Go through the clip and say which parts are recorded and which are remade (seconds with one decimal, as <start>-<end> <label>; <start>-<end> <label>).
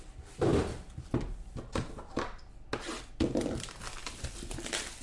0.0-5.0 recorded